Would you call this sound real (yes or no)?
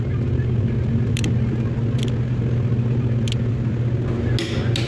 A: yes